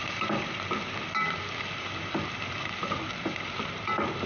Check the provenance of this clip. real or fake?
fake